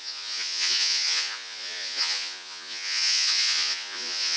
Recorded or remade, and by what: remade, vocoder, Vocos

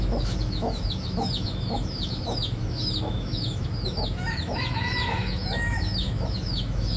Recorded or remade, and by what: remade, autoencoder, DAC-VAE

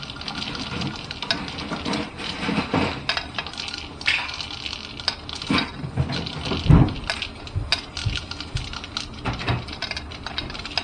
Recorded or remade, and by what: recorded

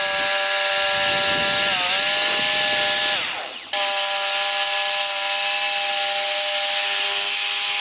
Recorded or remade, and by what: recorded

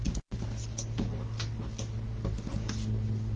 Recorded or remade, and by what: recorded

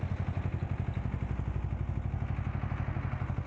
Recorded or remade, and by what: recorded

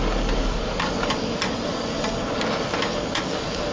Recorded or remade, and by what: recorded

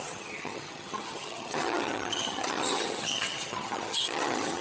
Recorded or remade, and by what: remade, vocoder, HiFi-GAN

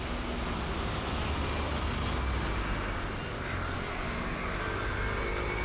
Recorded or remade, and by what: recorded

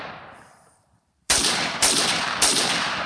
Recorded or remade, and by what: remade, vocoder, BigVGAN v2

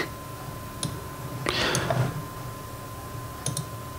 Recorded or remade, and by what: recorded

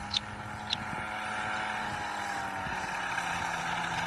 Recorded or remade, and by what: recorded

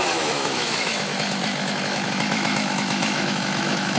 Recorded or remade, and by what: remade, autoencoder, DAC-VAE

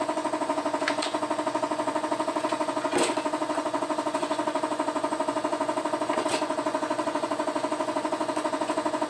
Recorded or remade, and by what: remade, vocoder, Vocos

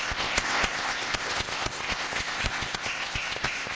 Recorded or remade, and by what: remade, codec, ZipCodec